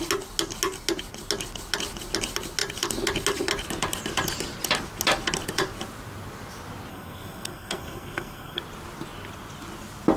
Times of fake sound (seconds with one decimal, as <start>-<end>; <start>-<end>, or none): 6.9-8.6